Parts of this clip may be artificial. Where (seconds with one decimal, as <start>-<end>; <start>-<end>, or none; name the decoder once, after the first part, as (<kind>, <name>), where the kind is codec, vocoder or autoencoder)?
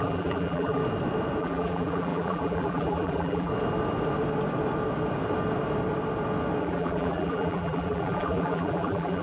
0.0-0.8 (vocoder, BigVGAN v2); 1.4-3.5; 6.6-9.2